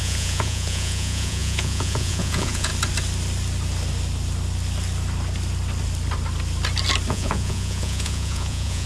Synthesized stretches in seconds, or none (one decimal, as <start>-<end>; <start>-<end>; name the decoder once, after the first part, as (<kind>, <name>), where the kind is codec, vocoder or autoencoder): 0.0-2.7 (vocoder, Vocos); 7.1-8.9